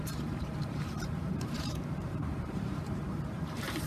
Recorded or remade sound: remade